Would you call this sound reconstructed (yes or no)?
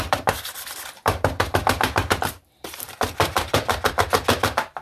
yes